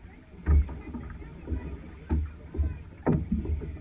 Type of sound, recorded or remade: recorded